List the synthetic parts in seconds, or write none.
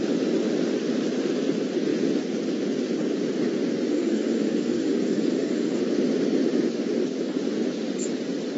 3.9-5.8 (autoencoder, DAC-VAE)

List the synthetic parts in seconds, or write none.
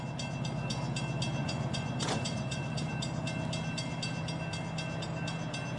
1.4-2.9 (vocoder, Vocos)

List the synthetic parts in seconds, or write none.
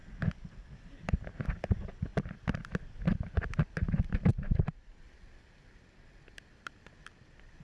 none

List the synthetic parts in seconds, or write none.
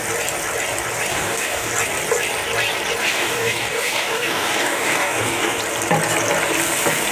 1.1-1.7 (codec, DAC); 3.0-5.6